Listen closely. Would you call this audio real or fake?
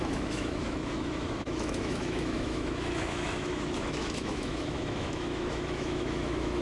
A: fake